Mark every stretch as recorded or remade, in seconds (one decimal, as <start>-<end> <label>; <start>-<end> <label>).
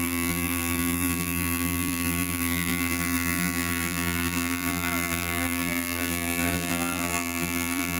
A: 0.0-8.0 remade